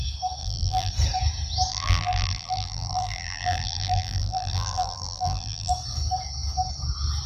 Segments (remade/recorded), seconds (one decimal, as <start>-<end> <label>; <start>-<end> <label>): 0.0-0.4 recorded; 0.4-0.9 remade; 0.9-1.7 recorded; 1.7-5.7 remade; 5.7-7.3 recorded